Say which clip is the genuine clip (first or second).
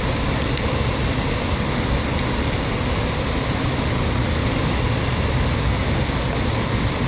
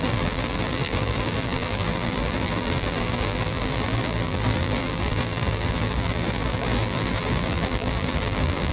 first